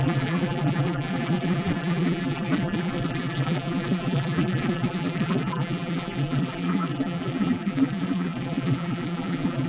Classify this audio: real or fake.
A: fake